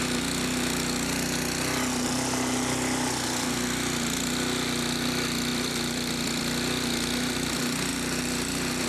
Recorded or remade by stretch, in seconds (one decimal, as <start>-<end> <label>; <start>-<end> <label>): 0.0-5.5 recorded; 5.5-6.4 remade; 6.4-7.9 recorded; 7.9-8.9 remade